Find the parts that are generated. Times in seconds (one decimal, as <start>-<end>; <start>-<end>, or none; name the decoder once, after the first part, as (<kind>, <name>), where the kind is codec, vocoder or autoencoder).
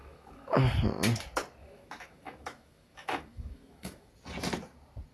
0.0-0.6 (autoencoder, DAC-VAE); 1.6-4.1